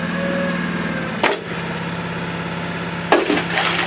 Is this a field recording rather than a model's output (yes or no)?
yes